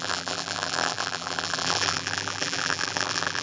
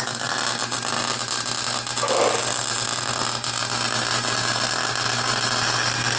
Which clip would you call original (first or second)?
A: second